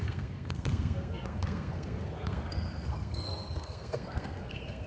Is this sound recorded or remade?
remade